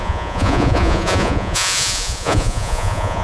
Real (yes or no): no